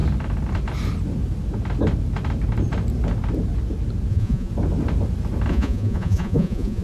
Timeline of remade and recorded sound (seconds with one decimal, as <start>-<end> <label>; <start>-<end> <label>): 0.0-4.1 recorded; 4.1-4.5 remade; 4.5-5.5 recorded; 5.5-6.8 remade